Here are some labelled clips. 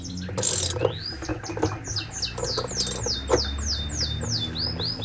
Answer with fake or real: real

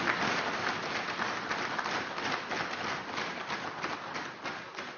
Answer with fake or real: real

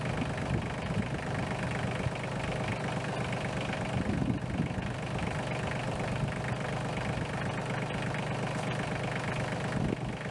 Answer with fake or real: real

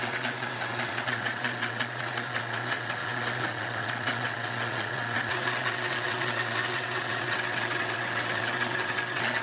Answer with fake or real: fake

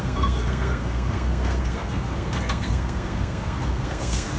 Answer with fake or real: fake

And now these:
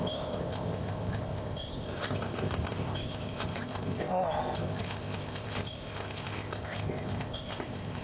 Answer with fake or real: fake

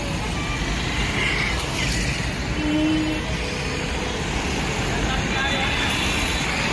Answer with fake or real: real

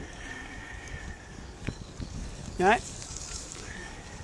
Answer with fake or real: fake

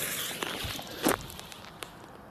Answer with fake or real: fake